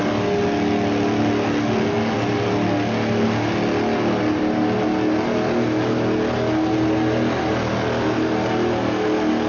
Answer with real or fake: real